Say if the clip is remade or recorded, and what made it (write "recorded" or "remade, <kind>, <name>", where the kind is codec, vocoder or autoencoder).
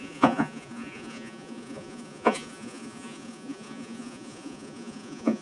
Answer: remade, vocoder, Vocos